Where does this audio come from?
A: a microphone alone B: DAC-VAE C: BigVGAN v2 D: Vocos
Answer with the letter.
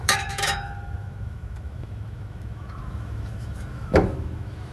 B